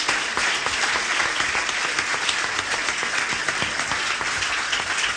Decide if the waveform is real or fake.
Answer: real